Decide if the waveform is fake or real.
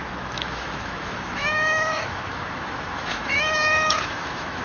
fake